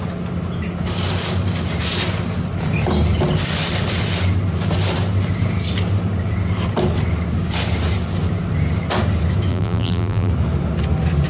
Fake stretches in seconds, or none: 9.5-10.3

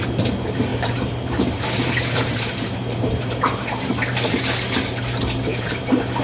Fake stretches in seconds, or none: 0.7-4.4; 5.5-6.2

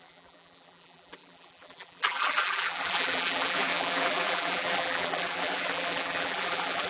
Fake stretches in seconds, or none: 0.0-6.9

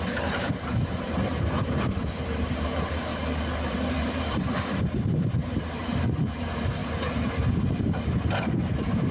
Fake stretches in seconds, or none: 0.0-3.1; 3.7-6.8; 8.4-9.1

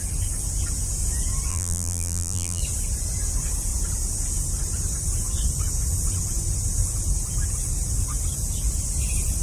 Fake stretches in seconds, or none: 1.5-2.6